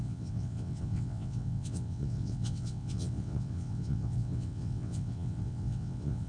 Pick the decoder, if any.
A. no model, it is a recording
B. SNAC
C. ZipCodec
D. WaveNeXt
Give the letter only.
D